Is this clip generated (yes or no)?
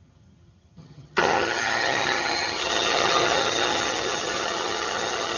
yes